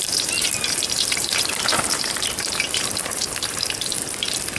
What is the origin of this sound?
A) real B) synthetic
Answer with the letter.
B